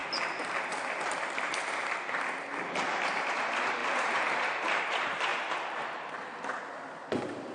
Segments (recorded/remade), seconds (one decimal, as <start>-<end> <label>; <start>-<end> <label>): 0.0-3.8 recorded; 3.8-4.8 remade; 4.8-7.5 recorded